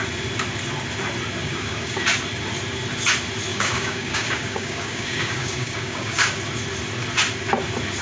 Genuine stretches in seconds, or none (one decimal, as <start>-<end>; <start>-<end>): 0.0-1.4; 2.0-3.5; 6.4-8.0